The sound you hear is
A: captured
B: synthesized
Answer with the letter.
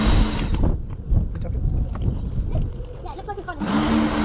A